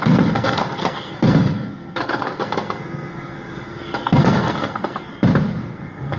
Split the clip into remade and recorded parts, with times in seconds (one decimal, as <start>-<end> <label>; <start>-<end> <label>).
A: 0.0-5.1 remade; 5.1-5.6 recorded; 5.6-6.2 remade